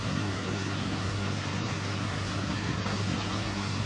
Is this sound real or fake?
fake